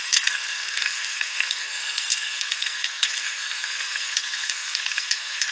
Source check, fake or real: fake